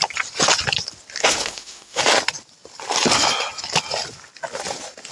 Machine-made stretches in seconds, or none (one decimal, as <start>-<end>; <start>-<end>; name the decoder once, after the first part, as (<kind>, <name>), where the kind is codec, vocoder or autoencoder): 1.2-2.0 (autoencoder, DAC-VAE)